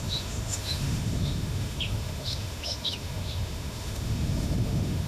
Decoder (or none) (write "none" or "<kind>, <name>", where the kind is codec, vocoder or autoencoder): autoencoder, DAC-VAE